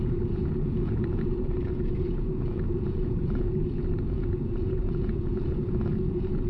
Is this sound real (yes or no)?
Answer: no